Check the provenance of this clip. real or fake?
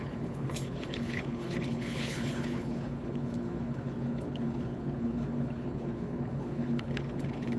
fake